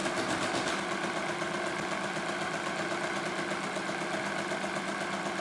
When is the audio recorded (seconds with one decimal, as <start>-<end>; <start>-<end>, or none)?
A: 0.0-5.4